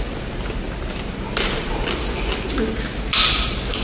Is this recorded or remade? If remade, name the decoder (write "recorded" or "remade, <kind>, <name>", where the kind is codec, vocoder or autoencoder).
recorded